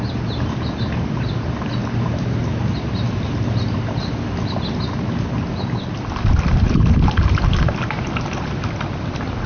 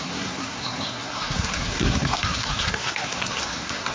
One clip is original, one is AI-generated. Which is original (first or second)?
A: first